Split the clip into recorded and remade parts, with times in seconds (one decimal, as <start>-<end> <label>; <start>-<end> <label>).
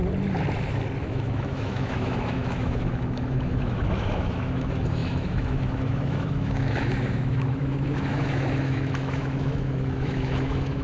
0.0-1.0 recorded; 1.0-10.8 remade